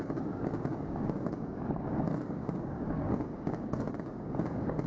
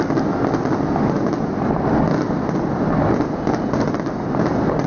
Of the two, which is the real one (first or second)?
second